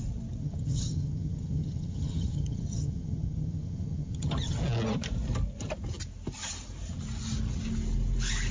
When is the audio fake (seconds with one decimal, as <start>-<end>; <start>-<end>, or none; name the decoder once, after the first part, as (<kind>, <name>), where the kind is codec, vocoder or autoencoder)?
0.4-4.6 (vocoder, HiFi-GAN)